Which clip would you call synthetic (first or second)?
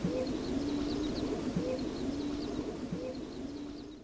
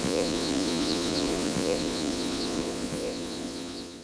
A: second